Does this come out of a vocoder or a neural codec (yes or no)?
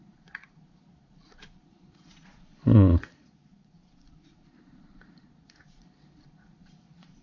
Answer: yes